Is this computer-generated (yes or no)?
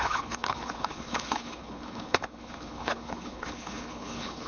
yes